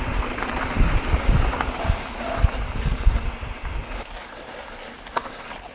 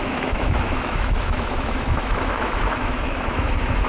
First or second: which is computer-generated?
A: second